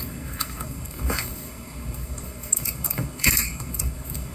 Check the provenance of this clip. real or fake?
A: fake